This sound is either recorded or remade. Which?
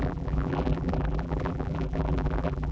remade